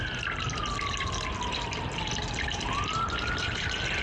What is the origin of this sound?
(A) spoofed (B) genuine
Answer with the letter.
B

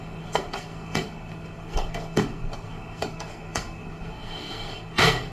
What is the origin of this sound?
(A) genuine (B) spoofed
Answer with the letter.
B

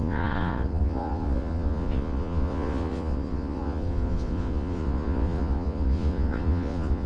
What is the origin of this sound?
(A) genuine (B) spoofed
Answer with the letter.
B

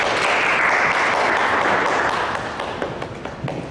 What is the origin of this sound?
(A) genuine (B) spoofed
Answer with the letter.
A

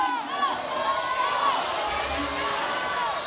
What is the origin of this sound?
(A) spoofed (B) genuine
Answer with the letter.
B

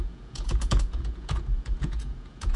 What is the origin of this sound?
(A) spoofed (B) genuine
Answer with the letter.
A